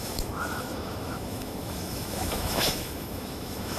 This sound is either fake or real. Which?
fake